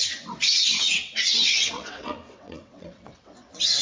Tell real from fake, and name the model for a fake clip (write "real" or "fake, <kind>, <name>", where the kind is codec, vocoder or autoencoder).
fake, vocoder, WaveNeXt